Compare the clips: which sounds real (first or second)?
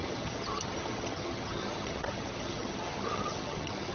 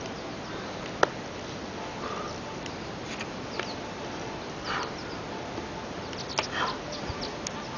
second